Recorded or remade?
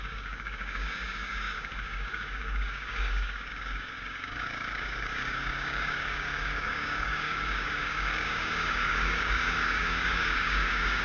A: remade